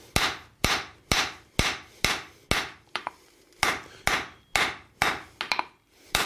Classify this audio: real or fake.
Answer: real